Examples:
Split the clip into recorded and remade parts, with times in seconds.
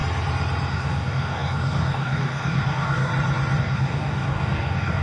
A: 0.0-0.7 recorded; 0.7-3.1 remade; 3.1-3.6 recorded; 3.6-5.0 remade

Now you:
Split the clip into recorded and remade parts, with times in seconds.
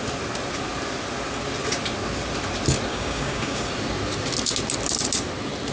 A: 0.0-2.9 recorded; 2.9-3.7 remade; 3.7-5.7 recorded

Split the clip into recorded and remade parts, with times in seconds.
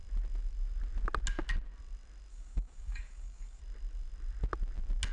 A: 0.0-2.3 recorded; 2.3-3.6 remade; 3.6-5.1 recorded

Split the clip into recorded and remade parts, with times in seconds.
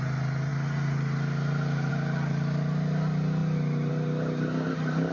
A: 0.0-5.1 recorded